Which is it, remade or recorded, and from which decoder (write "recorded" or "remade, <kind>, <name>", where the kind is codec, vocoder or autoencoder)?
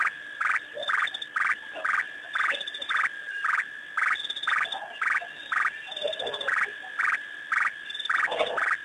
recorded